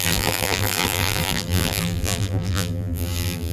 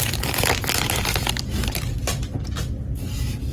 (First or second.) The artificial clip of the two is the first